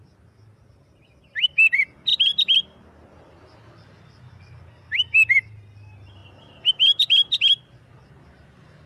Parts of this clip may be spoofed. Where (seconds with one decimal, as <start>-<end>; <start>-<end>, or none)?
none